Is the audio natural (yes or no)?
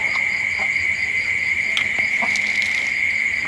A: yes